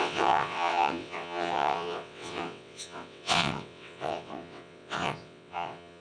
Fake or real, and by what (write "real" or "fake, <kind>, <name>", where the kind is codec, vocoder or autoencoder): fake, vocoder, WaveNeXt